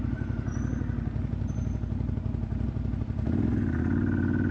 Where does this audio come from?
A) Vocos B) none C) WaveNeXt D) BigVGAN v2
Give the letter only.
B